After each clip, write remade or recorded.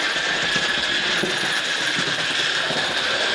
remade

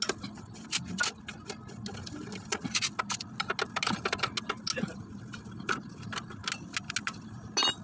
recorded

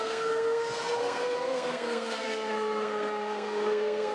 remade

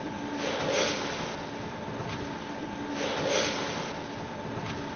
recorded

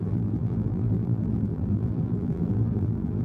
remade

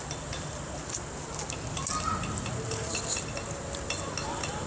recorded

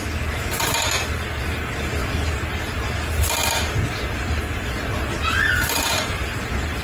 recorded